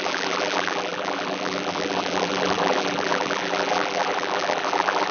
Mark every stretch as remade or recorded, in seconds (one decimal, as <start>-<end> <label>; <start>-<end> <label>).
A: 0.0-5.1 remade